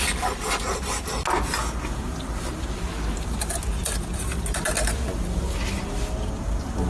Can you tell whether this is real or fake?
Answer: real